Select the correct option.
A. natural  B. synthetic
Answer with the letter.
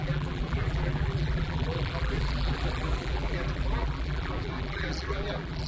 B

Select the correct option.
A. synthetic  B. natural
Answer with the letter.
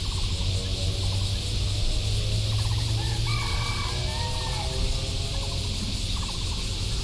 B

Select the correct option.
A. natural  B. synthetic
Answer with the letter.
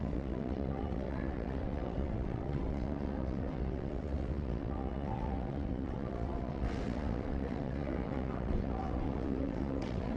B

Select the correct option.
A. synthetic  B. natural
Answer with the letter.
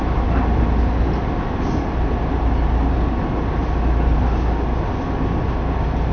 B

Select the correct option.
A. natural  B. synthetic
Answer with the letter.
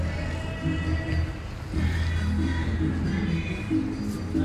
A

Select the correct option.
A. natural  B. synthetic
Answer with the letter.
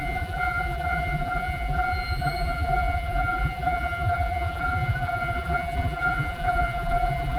B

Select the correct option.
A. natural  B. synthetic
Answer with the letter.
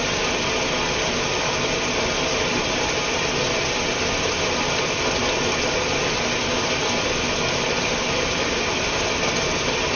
A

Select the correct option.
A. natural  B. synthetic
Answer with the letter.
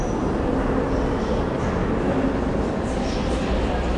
A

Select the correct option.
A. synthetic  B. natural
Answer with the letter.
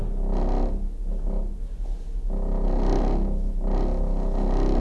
B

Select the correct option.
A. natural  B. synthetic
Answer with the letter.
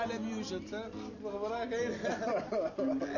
A